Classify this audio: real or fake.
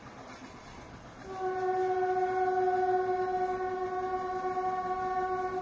real